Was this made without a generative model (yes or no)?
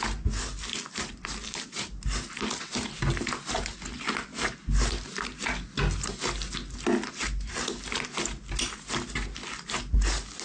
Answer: yes